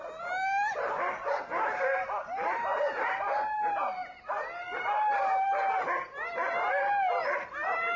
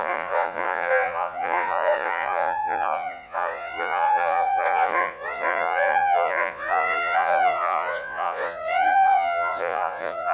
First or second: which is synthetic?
second